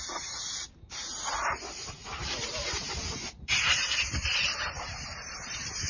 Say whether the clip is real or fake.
fake